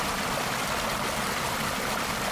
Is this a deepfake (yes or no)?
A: no